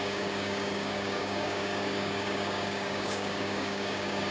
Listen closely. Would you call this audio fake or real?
fake